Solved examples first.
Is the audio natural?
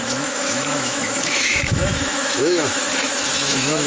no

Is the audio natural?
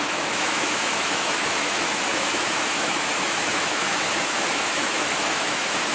no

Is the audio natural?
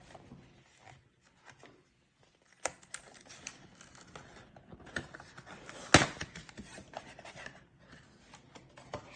yes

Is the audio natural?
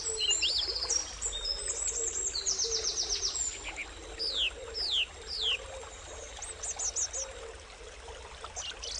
yes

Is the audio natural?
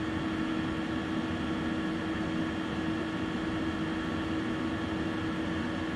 yes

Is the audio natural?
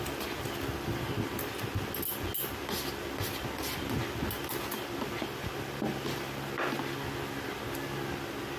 yes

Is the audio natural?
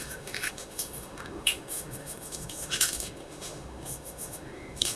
no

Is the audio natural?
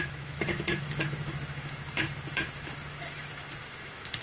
no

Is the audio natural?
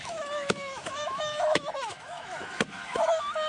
no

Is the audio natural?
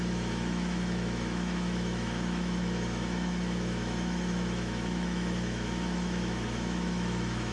no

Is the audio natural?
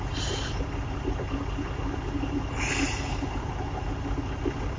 yes